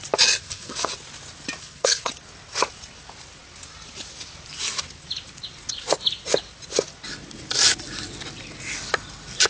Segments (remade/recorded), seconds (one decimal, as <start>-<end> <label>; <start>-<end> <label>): 0.0-0.4 recorded; 0.4-0.9 remade; 0.9-1.6 recorded; 1.6-2.1 remade; 2.1-9.5 recorded